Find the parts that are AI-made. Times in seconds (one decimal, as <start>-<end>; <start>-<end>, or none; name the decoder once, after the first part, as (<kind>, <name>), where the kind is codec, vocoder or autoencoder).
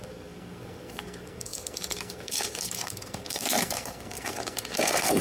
0.0-5.2 (codec, SNAC)